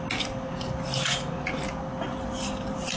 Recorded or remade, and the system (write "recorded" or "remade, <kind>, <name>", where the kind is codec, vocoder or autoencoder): recorded